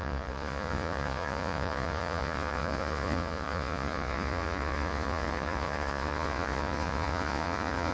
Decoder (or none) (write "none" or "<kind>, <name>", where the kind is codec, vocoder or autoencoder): vocoder, Vocos